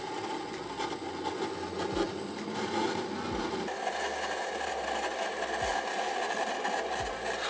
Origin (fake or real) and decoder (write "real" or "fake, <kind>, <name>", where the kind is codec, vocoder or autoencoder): real